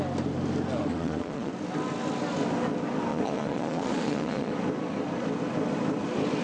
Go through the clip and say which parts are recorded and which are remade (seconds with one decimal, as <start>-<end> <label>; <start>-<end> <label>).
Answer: 0.0-0.9 recorded; 0.9-1.5 remade; 1.5-3.1 recorded; 3.1-4.5 remade; 4.5-6.4 recorded